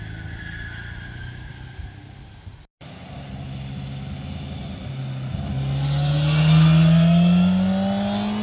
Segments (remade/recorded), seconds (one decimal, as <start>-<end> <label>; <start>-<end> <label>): 0.0-8.4 recorded